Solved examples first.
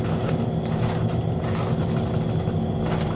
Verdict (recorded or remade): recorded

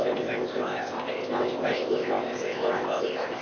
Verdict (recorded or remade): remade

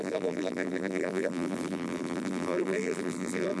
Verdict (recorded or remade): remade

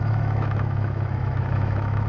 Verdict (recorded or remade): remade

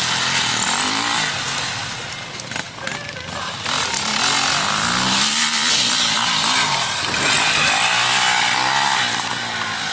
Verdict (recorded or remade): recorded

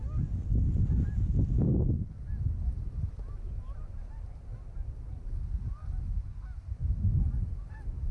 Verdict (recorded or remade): recorded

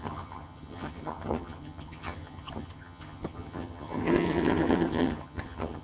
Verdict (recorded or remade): remade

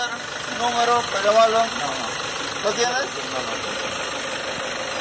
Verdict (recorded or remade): recorded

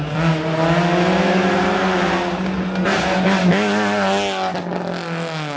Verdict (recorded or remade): recorded